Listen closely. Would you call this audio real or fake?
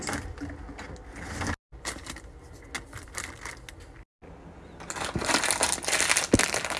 real